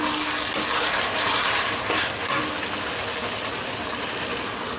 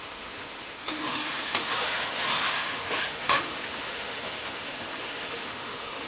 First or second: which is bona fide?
first